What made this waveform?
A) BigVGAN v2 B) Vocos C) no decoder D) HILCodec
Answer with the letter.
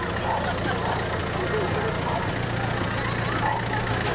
C